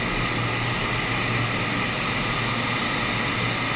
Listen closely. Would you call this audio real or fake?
real